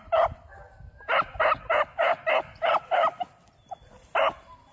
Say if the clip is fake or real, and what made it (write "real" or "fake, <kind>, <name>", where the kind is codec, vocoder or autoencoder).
real